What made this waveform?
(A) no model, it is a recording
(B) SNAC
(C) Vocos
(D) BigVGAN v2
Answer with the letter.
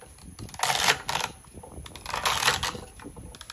A